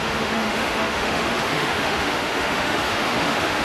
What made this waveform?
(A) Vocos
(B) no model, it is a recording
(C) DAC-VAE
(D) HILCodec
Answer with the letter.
C